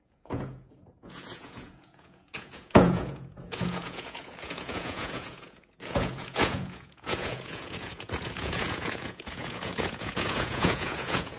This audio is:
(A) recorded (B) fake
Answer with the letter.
B